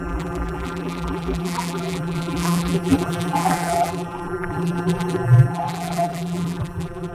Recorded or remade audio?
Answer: remade